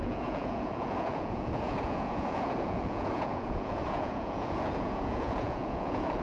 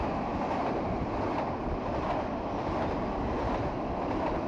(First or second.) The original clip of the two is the second